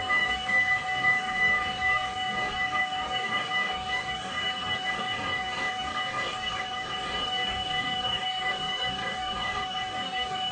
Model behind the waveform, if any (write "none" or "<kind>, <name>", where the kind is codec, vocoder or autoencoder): codec, DAC